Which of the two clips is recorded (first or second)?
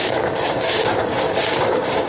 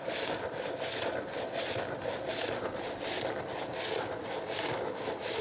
second